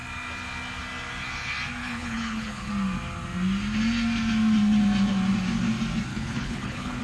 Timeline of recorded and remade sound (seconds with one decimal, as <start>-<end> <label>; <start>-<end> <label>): 0.0-1.8 recorded; 1.8-2.7 remade; 2.7-6.1 recorded; 6.1-7.0 remade